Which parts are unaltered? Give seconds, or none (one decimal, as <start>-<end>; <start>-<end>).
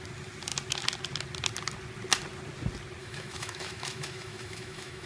0.0-3.0